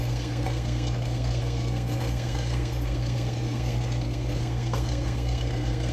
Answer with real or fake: fake